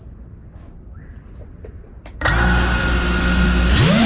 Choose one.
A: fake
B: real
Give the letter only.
B